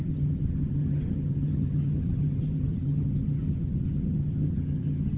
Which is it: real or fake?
fake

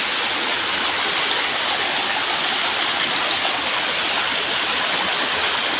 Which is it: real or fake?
real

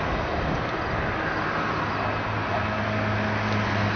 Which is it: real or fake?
real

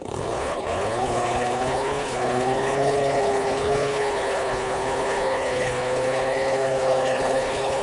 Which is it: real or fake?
fake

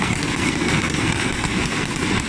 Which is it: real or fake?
fake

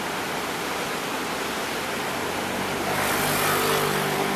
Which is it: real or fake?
real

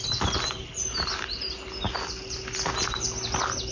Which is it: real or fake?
real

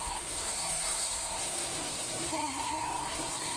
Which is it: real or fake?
fake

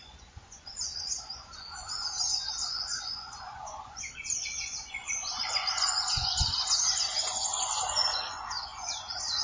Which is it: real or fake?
fake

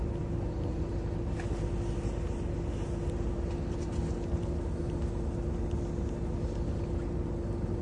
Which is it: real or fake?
real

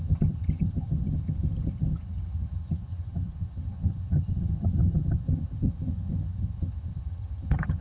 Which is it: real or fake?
fake